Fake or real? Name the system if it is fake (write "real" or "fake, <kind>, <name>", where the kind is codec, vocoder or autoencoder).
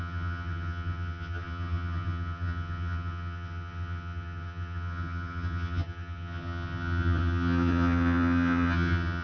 fake, vocoder, HiFi-GAN